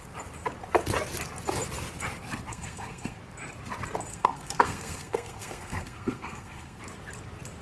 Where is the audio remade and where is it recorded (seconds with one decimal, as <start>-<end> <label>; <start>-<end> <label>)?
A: 0.0-2.5 recorded; 2.5-3.2 remade; 3.2-4.1 recorded; 4.1-6.8 remade; 6.8-7.6 recorded